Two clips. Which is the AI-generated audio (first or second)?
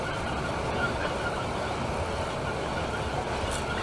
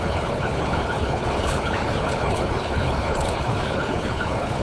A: second